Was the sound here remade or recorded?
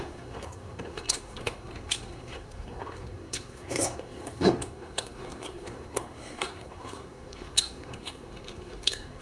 remade